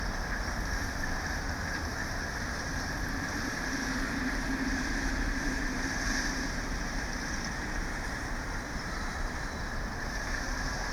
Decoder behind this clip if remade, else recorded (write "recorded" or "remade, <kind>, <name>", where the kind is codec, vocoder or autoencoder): remade, vocoder, BigVGAN v2